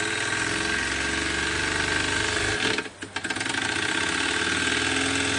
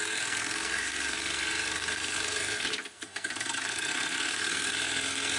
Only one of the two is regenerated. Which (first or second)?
second